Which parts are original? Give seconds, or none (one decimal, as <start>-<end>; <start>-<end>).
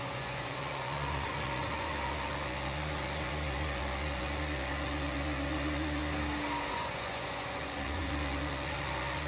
6.0-6.7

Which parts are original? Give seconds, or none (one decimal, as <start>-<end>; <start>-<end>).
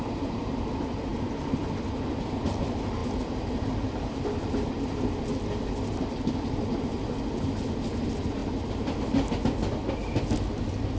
0.0-11.0